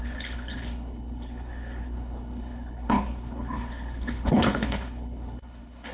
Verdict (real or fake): fake